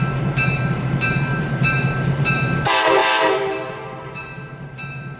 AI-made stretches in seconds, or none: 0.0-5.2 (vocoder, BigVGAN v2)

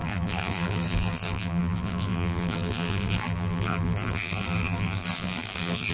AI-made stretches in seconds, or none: 0.0-5.9 (vocoder, BigVGAN v2)

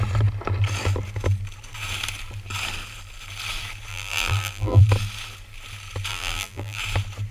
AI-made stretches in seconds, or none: 3.9-4.8 (vocoder, BigVGAN v2); 6.1-6.8